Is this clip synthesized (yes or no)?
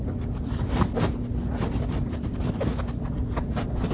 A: no